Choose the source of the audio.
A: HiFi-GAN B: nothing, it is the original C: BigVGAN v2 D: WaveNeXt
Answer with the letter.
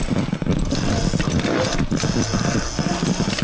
B